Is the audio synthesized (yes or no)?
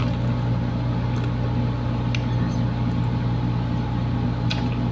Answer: no